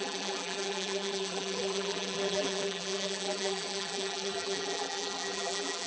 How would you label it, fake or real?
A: fake